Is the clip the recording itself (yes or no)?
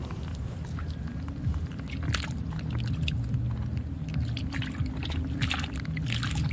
yes